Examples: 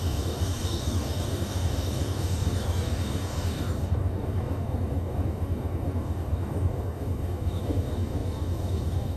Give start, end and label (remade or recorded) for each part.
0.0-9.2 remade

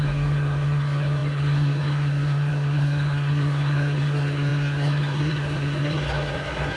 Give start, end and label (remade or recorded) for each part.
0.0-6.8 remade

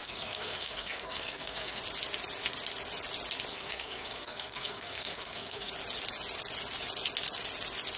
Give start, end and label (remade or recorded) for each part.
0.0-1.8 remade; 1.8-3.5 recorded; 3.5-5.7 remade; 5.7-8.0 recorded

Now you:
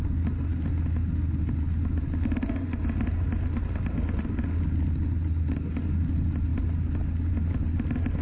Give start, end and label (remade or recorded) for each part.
0.0-8.2 recorded

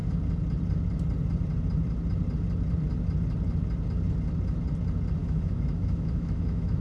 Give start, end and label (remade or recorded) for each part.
0.0-5.2 recorded; 5.2-6.8 remade